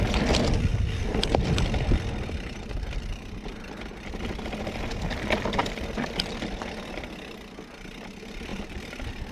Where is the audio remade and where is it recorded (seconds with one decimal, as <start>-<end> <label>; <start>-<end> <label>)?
0.0-0.7 recorded; 0.7-4.8 remade; 4.8-5.6 recorded; 5.6-6.9 remade; 6.9-8.5 recorded; 8.5-9.3 remade